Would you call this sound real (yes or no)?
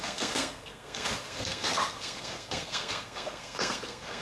no